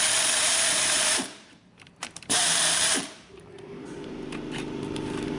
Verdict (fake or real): fake